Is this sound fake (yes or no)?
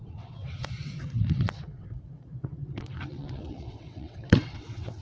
yes